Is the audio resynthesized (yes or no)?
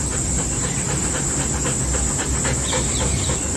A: no